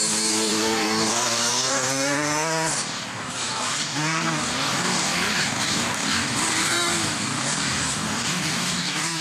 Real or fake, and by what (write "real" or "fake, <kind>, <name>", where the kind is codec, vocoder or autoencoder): fake, codec, DAC